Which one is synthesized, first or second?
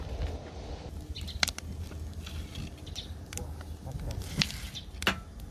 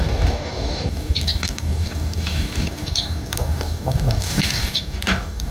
second